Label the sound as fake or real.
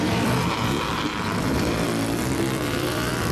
fake